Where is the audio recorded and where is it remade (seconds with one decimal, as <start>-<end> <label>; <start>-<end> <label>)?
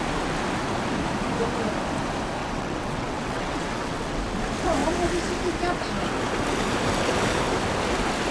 0.0-2.4 recorded; 2.4-4.2 remade; 4.2-8.3 recorded